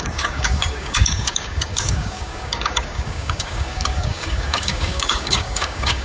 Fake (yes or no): yes